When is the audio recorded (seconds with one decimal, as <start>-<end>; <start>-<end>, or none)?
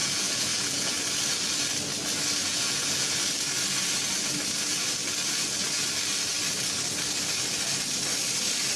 0.9-2.4; 3.1-8.8